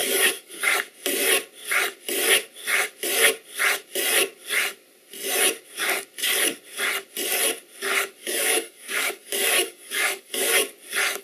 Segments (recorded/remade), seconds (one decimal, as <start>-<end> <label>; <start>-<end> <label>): 0.0-0.7 remade; 0.7-8.2 recorded; 8.2-10.6 remade; 10.6-11.2 recorded